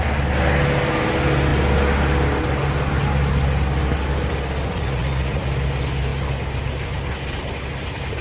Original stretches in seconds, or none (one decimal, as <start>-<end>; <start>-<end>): 0.0-4.7; 5.4-8.2